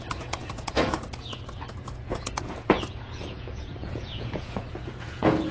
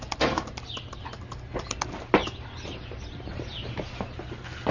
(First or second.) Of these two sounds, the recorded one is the second